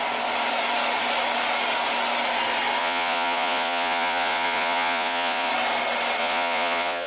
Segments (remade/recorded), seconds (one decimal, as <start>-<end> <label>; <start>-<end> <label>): 0.0-2.8 recorded; 2.8-5.5 remade; 5.5-6.2 recorded; 6.2-7.1 remade